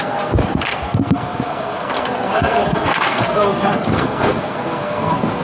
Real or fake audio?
fake